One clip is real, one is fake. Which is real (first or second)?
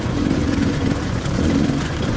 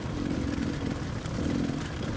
second